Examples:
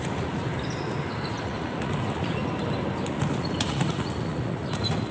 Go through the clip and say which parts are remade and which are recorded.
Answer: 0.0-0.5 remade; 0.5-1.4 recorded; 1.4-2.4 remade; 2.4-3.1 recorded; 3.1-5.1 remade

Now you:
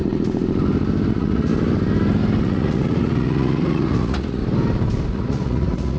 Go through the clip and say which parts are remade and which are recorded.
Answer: 0.0-1.1 recorded; 1.1-1.5 remade; 1.5-2.4 recorded; 2.4-4.4 remade; 4.4-5.1 recorded; 5.1-6.0 remade

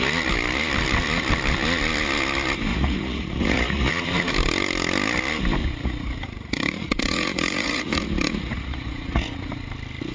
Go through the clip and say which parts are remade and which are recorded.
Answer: 0.0-2.7 recorded; 2.7-3.9 remade; 3.9-5.6 recorded; 5.6-9.5 remade; 9.5-10.1 recorded

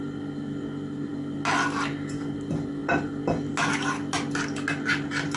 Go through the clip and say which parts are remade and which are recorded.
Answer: 0.0-5.4 recorded

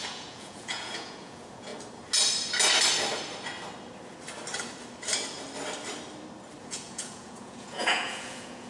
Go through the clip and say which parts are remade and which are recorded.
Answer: 0.0-1.7 remade; 1.7-6.6 recorded; 6.6-8.7 remade

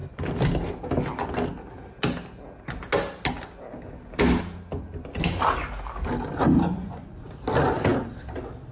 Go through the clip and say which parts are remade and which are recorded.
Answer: 0.0-6.7 recorded; 6.7-7.3 remade; 7.3-8.7 recorded